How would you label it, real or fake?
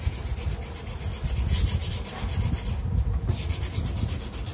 real